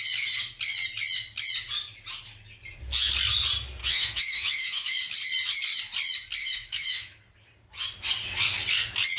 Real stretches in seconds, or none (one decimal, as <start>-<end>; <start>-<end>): 0.0-3.8; 5.0-6.4; 7.2-9.2